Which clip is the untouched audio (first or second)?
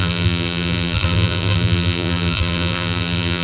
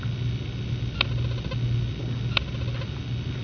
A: second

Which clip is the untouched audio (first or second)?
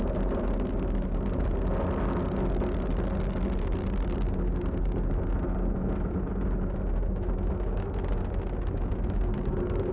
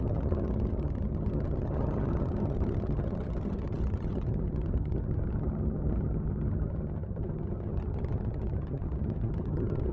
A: first